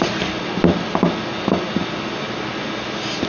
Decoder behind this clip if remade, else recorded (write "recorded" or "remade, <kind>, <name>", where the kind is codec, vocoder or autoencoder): recorded